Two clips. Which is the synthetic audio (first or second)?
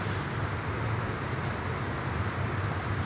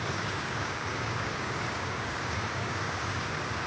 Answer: second